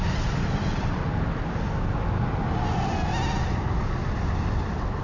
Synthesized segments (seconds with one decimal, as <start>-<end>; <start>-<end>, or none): none